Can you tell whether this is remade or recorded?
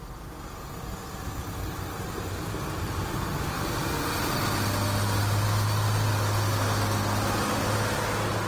recorded